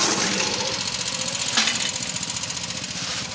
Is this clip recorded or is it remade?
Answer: recorded